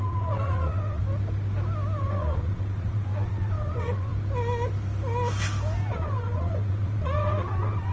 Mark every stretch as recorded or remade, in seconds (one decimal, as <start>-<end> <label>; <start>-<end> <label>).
0.0-1.0 remade; 1.0-2.0 recorded; 2.0-4.1 remade; 4.1-5.9 recorded; 5.9-7.9 remade